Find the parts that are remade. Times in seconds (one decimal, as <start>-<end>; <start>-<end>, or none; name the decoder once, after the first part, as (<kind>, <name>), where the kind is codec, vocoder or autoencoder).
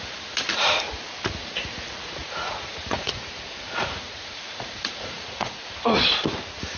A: 2.2-5.7 (vocoder, Vocos)